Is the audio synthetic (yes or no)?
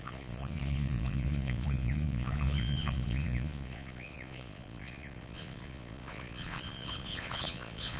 yes